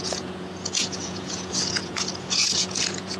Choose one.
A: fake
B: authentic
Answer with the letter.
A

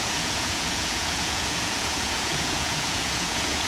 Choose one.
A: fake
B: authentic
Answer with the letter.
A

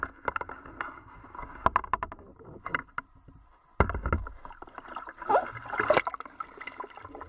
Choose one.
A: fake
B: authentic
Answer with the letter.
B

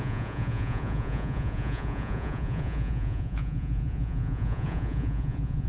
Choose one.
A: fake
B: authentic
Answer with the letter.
A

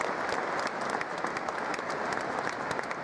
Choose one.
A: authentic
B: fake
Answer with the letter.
A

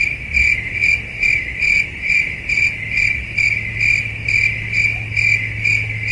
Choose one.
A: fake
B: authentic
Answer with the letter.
B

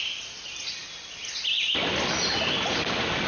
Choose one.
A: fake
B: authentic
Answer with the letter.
B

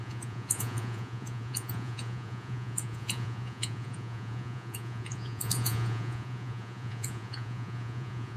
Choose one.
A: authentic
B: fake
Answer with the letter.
B